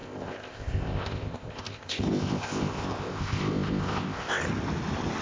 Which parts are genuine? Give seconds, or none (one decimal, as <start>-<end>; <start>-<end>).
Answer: 4.4-5.2